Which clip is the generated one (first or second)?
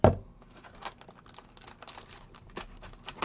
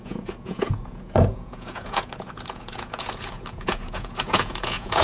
second